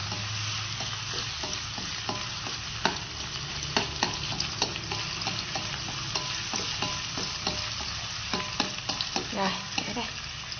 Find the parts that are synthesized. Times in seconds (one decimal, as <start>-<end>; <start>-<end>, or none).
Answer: none